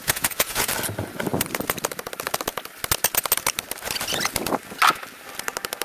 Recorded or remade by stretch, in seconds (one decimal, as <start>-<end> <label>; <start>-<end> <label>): 0.0-0.7 remade; 0.7-5.8 recorded